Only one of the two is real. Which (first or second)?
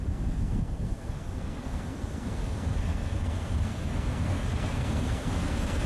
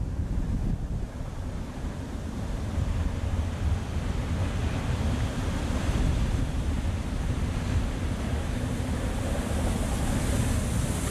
second